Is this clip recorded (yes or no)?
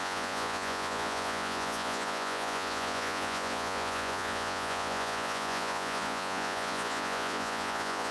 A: no